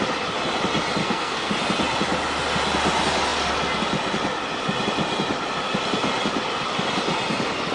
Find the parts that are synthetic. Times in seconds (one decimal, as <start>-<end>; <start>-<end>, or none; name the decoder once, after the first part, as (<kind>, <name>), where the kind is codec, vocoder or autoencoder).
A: 1.0-1.5 (codec, SNAC)